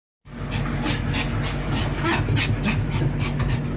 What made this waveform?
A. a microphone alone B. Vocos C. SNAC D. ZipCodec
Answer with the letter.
A